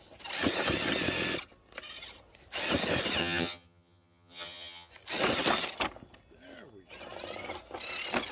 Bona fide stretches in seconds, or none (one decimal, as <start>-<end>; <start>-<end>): 0.0-3.2; 4.9-8.3